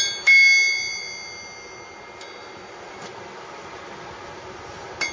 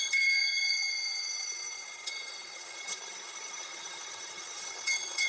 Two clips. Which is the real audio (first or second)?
first